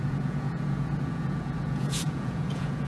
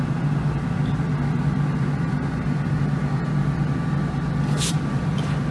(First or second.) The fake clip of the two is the first